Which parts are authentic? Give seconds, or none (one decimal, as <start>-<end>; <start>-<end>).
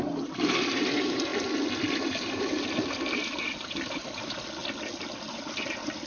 4.6-6.1